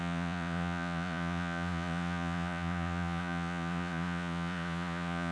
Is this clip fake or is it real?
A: fake